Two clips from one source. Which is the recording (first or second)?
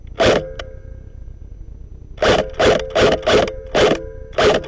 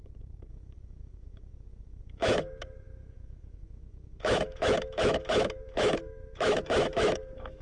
first